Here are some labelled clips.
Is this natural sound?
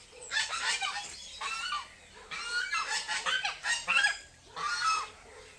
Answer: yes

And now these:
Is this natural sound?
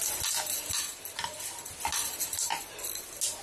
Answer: yes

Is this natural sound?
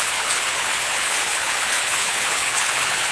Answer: no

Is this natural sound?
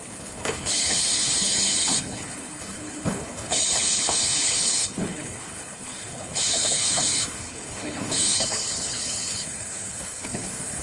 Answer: no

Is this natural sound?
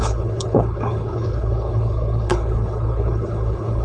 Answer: no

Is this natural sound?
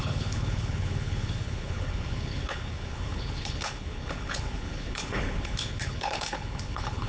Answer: no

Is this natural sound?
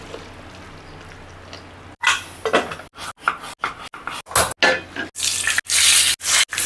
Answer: yes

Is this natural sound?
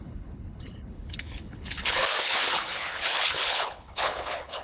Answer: no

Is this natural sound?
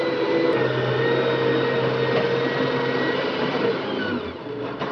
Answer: yes